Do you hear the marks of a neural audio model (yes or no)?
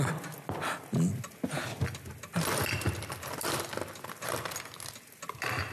no